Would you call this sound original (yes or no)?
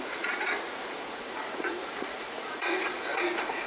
no